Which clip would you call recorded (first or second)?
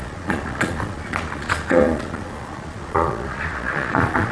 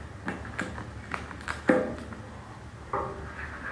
second